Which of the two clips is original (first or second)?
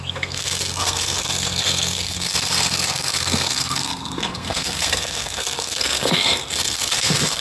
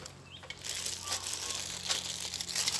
second